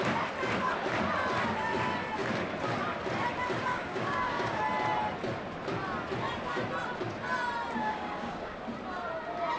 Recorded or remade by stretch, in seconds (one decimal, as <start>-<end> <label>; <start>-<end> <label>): 0.0-3.7 recorded; 3.7-4.6 remade; 4.6-7.8 recorded; 7.8-8.6 remade; 8.6-9.6 recorded